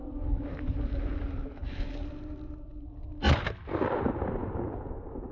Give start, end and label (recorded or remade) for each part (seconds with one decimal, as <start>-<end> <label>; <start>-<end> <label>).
0.0-5.3 recorded